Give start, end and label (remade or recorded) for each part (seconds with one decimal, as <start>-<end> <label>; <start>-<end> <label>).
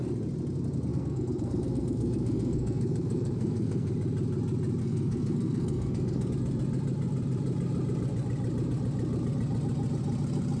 0.0-0.9 recorded; 0.9-3.9 remade; 3.9-4.8 recorded; 4.8-6.3 remade; 6.3-10.6 recorded